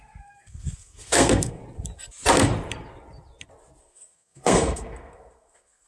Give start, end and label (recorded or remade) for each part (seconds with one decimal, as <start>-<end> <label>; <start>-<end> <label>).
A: 0.0-1.6 remade; 1.6-3.8 recorded; 3.8-5.9 remade

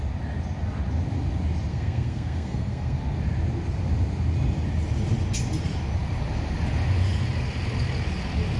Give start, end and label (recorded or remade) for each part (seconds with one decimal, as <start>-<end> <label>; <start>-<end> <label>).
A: 0.0-1.7 recorded; 1.7-3.0 remade; 3.0-8.6 recorded

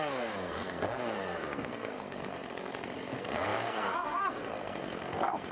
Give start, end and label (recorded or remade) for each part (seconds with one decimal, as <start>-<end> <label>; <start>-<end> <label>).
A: 0.0-5.5 remade

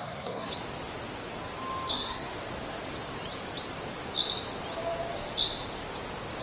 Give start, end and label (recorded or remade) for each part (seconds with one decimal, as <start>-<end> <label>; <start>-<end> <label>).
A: 0.0-0.5 remade; 0.5-1.9 recorded; 1.9-2.3 remade; 2.3-6.4 recorded

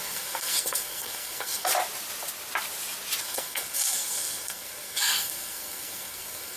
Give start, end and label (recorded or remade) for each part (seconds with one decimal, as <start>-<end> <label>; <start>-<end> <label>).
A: 0.0-1.7 remade; 1.7-3.2 recorded; 3.2-6.6 remade

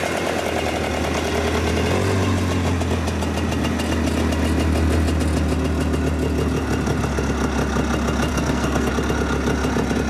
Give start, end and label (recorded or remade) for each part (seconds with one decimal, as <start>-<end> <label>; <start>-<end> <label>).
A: 0.0-8.3 recorded; 8.3-8.9 remade; 8.9-10.1 recorded

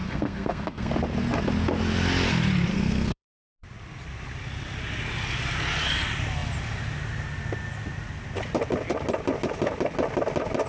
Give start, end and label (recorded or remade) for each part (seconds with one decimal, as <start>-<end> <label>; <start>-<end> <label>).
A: 0.0-0.9 remade; 0.9-2.7 recorded; 2.7-3.5 remade; 3.5-10.7 recorded